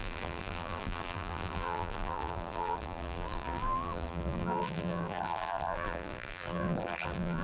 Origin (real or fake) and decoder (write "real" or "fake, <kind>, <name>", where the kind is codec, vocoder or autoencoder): fake, vocoder, BigVGAN v2